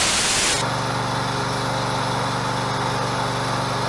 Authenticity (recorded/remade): recorded